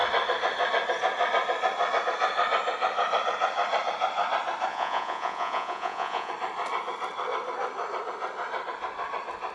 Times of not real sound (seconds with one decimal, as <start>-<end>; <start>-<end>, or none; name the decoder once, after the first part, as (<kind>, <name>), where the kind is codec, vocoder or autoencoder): 4.7-6.3 (vocoder, Vocos)